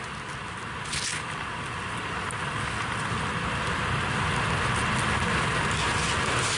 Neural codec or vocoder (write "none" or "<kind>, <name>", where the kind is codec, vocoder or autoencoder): none